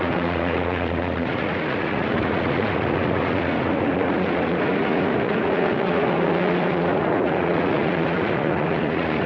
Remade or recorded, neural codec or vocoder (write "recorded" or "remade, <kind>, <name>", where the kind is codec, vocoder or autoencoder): remade, vocoder, Vocos